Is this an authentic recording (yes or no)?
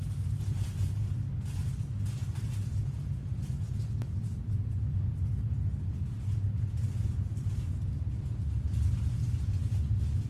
yes